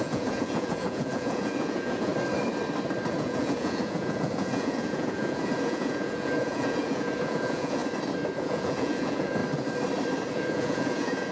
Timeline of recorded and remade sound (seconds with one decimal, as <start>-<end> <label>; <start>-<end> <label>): 0.0-2.1 remade; 2.1-3.1 recorded; 3.1-7.8 remade; 7.8-8.4 recorded; 8.4-9.4 remade; 9.4-10.3 recorded; 10.3-11.3 remade